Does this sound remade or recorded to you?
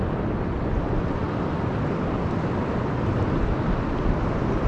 recorded